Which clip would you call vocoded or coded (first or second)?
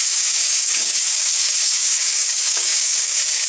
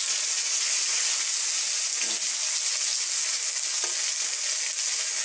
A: first